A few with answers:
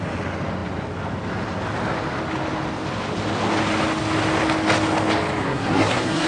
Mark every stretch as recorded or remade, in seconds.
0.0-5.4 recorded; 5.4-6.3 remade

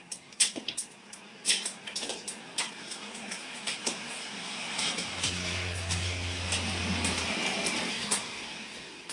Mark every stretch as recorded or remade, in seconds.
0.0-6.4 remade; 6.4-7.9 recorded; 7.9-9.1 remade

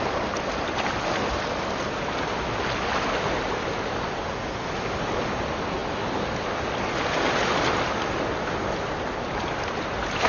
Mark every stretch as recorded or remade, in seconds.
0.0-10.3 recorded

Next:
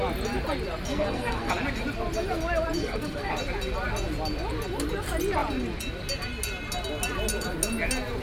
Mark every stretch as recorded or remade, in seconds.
0.0-0.9 recorded; 0.9-1.5 remade; 1.5-2.8 recorded; 2.8-3.3 remade; 3.3-8.2 recorded